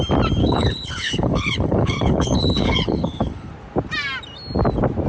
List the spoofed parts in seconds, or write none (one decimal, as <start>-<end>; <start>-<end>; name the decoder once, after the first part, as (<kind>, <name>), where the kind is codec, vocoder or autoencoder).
0.4-3.5 (codec, HILCodec)